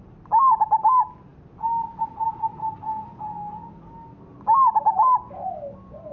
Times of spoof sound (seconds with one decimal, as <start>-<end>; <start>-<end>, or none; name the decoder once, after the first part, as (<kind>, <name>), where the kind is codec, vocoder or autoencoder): none